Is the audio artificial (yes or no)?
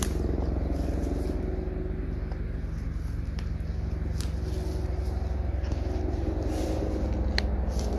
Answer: no